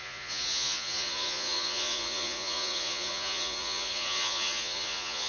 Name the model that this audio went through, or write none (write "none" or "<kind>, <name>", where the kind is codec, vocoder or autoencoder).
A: vocoder, Vocos